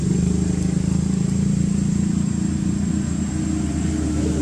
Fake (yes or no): no